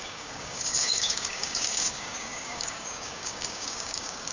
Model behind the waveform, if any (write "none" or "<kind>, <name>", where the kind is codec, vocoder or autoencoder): codec, DAC